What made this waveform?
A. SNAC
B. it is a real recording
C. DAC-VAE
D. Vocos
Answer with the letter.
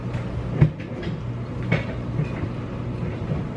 B